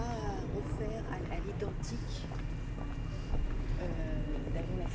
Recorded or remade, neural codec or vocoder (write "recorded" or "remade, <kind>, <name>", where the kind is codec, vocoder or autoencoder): recorded